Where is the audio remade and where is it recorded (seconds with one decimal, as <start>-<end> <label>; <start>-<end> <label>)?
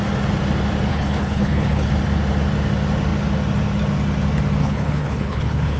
0.0-0.9 recorded; 0.9-1.9 remade; 1.9-4.6 recorded; 4.6-5.8 remade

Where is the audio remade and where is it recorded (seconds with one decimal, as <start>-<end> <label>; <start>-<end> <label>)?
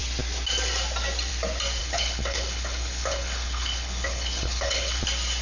0.0-1.8 recorded; 1.8-5.0 remade; 5.0-5.4 recorded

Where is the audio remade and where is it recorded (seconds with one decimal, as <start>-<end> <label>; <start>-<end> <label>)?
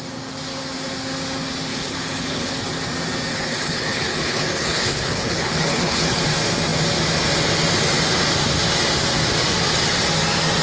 0.0-1.7 recorded; 1.7-2.6 remade; 2.6-3.3 recorded; 3.3-6.2 remade; 6.2-10.6 recorded